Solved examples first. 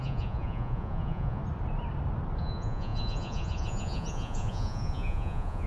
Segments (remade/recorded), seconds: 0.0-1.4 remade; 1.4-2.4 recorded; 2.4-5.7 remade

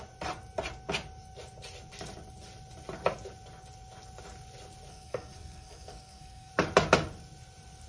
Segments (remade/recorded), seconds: 0.0-4.9 recorded; 4.9-6.5 remade; 6.5-7.9 recorded

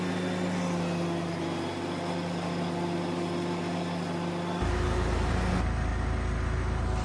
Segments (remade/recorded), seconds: 0.0-7.0 recorded

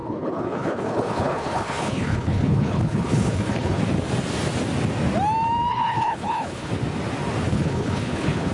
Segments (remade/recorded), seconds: 0.0-3.8 remade; 3.8-5.7 recorded; 5.7-6.7 remade; 6.7-7.5 recorded; 7.5-8.5 remade

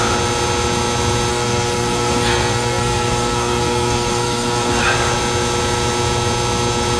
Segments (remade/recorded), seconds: 0.0-1.3 recorded; 1.3-4.8 remade; 4.8-7.0 recorded